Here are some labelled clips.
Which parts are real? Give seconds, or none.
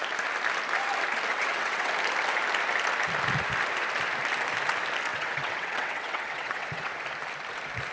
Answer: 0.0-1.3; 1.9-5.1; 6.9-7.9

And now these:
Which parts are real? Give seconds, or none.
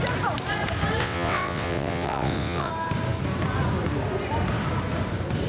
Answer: 0.0-1.0; 2.7-5.5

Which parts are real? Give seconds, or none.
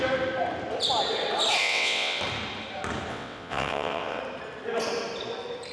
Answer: 0.0-1.6; 2.2-3.1; 4.2-5.7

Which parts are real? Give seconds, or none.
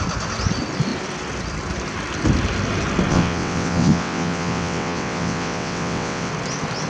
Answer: 0.0-3.1; 6.3-6.9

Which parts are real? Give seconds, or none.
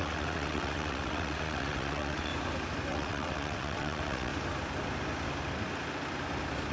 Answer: 2.3-2.9; 4.3-6.7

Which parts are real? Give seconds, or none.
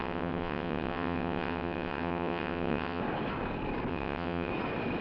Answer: 3.0-3.9; 4.5-5.0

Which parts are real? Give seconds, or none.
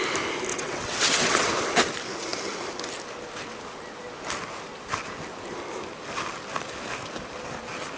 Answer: 0.0-0.5; 1.5-8.0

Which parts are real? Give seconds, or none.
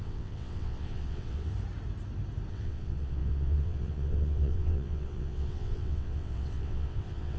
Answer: 1.5-2.5